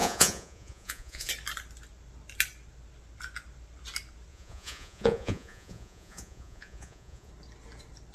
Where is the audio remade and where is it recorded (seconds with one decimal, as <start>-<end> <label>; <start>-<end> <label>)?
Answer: 0.0-1.3 remade; 1.3-4.3 recorded; 4.3-7.3 remade; 7.3-8.1 recorded